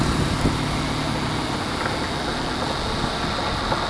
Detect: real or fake real